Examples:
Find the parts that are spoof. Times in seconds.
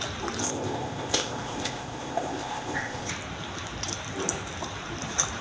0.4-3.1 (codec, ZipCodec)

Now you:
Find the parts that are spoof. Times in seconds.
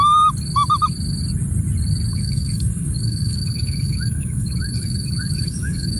2.1-6.0 (codec, DAC)